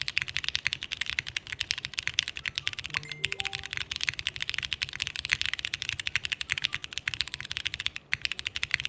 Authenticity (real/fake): real